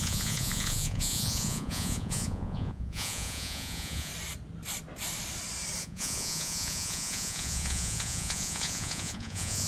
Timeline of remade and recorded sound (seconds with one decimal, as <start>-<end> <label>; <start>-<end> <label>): 0.0-4.1 remade; 4.1-5.8 recorded; 5.8-9.7 remade